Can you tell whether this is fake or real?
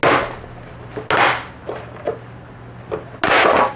real